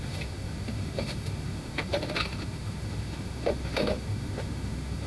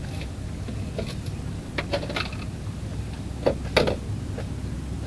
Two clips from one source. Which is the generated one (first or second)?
first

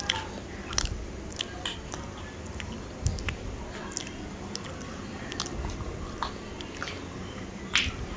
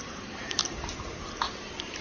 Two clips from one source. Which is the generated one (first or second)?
second